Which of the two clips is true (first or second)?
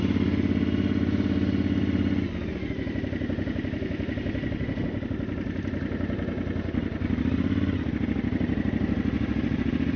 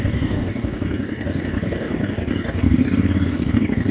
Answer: first